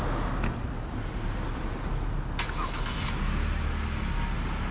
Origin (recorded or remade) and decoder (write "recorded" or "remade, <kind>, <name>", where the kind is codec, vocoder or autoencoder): recorded